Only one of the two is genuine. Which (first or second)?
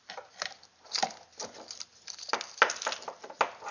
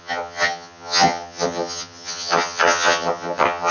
first